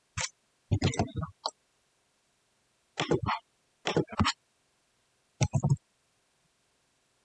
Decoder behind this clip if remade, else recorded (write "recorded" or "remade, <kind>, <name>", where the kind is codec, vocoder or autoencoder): recorded